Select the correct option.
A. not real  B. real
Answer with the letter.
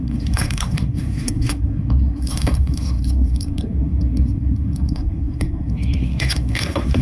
A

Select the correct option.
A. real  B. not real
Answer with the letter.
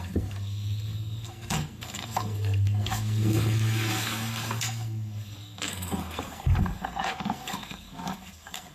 B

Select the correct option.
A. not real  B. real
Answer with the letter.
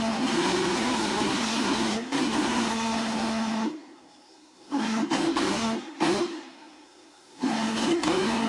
A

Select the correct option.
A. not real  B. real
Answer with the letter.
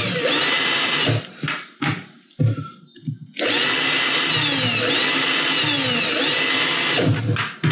B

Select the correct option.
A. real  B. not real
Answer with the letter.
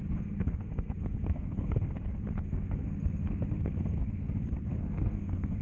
B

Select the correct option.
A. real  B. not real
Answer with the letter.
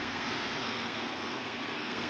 B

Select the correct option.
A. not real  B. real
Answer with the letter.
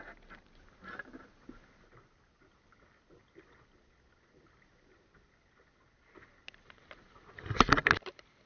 B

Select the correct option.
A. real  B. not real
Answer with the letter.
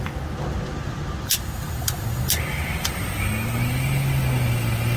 A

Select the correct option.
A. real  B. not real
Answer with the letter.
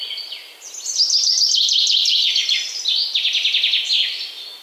A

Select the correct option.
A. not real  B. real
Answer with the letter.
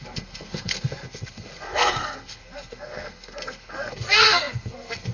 A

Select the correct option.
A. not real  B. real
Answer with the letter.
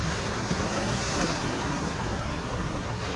A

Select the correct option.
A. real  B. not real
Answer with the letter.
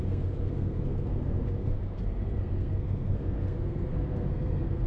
B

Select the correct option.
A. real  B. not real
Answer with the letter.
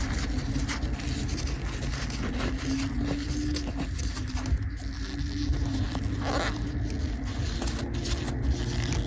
A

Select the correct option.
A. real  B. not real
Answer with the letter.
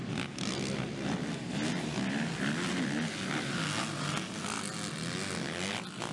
A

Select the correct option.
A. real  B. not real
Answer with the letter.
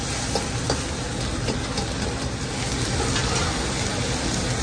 A